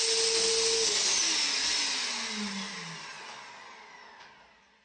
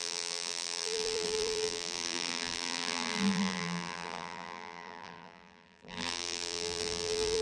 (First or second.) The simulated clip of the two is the second